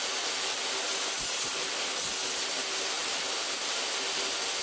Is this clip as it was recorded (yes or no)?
yes